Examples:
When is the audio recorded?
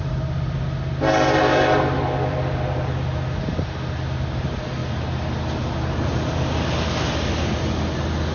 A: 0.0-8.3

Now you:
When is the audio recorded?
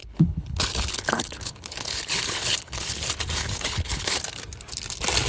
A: 3.0-3.4; 4.2-5.3